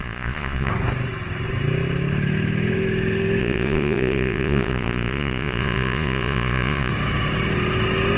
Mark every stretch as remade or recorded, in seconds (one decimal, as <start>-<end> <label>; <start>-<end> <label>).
0.0-0.7 remade; 0.7-3.4 recorded; 3.4-6.9 remade; 6.9-8.2 recorded